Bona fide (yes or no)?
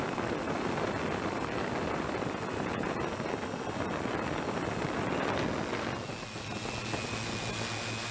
yes